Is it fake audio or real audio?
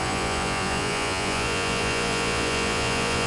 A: fake